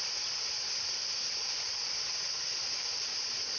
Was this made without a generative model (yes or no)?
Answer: yes